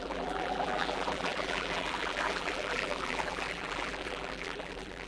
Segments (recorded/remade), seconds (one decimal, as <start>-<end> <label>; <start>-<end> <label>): 0.0-5.1 remade